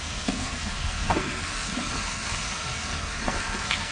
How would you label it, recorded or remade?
remade